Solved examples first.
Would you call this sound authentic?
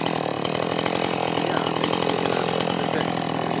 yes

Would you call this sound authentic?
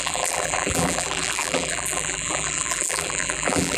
no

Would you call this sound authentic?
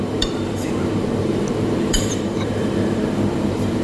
no